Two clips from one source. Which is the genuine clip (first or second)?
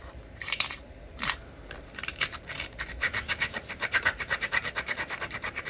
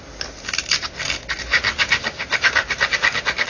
second